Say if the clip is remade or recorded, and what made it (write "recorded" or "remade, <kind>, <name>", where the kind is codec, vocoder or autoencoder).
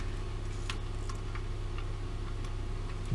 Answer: recorded